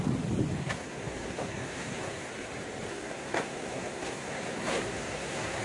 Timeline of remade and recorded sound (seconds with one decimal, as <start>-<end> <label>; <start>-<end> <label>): 0.0-0.6 recorded; 0.6-2.3 remade; 2.3-2.9 recorded; 2.9-5.6 remade